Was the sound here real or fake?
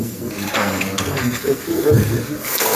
fake